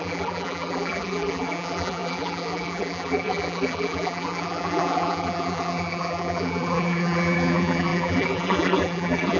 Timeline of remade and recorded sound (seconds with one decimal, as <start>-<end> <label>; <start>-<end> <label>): 0.0-9.4 remade